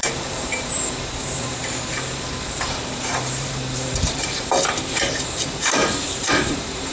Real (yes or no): no